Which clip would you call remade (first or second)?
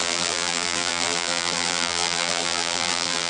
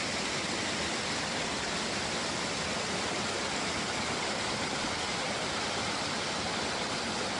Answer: first